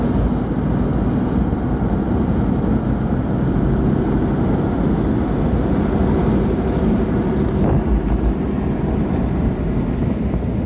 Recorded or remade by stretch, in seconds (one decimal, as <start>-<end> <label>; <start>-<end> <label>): 0.0-10.7 recorded